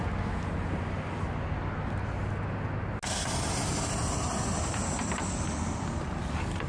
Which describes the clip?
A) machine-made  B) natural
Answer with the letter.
B